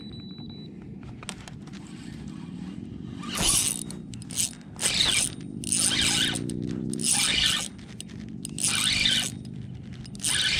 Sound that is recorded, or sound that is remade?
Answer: recorded